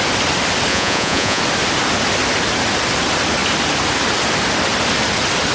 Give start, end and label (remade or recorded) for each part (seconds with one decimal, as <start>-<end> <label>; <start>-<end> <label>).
0.0-0.7 recorded; 0.7-1.4 remade; 1.4-5.5 recorded